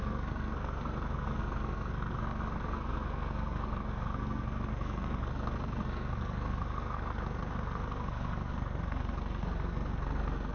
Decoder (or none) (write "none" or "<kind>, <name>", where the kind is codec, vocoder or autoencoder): codec, SNAC